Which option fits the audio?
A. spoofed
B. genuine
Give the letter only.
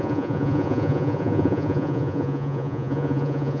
A